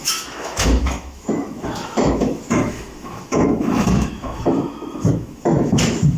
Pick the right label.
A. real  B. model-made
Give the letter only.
B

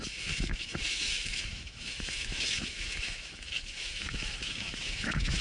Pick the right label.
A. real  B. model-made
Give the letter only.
B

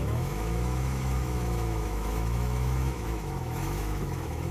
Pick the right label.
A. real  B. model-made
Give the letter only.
B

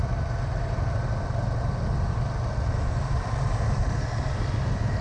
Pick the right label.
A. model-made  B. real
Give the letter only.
B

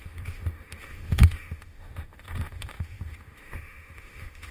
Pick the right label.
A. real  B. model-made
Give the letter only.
B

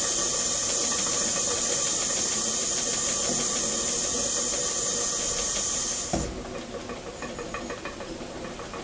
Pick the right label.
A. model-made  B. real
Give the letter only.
B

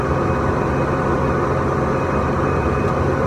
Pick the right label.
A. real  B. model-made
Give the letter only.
A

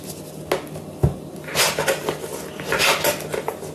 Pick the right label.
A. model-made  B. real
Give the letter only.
B